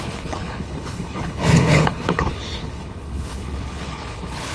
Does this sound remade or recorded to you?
remade